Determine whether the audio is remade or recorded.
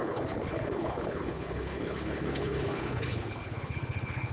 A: remade